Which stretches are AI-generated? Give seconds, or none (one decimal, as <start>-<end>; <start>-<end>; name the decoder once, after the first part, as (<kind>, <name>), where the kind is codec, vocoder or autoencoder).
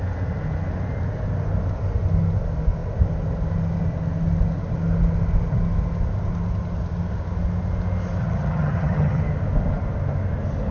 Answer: 8.2-9.2 (vocoder, HiFi-GAN)